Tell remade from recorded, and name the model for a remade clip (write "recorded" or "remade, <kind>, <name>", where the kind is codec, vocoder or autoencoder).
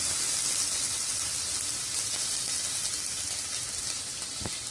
recorded